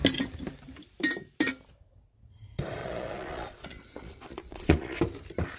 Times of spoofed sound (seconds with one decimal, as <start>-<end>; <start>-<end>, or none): 2.8-5.0